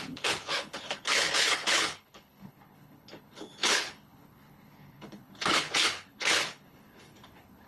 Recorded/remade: remade